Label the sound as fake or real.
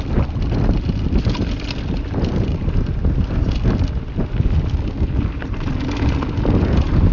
real